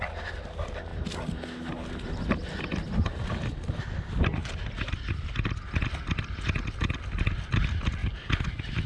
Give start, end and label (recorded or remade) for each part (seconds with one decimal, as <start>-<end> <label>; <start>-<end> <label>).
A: 0.0-8.9 recorded